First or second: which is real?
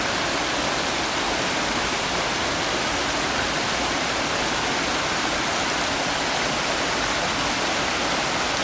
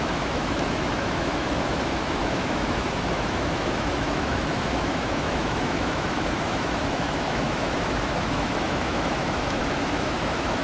first